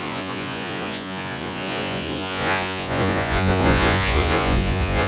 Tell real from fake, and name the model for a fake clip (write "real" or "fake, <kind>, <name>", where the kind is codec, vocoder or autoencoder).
fake, vocoder, Vocos